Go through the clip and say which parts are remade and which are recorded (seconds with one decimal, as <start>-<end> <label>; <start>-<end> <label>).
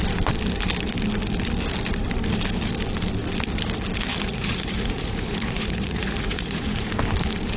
0.0-4.1 recorded; 4.1-6.9 remade; 6.9-7.6 recorded